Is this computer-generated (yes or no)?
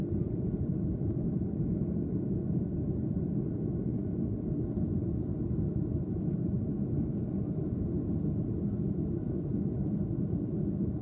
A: no